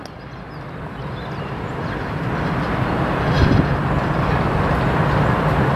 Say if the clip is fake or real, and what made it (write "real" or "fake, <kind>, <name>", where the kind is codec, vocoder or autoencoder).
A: real